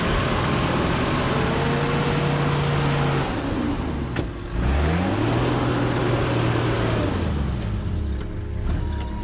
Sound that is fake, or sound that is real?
real